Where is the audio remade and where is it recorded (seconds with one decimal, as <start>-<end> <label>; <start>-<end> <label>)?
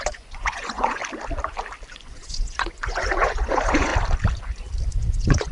0.0-1.0 remade; 1.0-1.9 recorded; 1.9-3.9 remade; 3.9-4.9 recorded; 4.9-5.5 remade